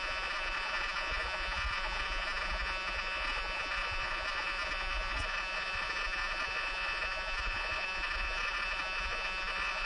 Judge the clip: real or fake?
fake